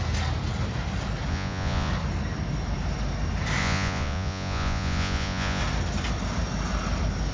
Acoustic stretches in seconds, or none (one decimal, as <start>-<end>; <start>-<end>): 0.0-1.3; 1.9-3.6; 5.6-7.3